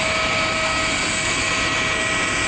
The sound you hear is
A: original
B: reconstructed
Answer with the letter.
A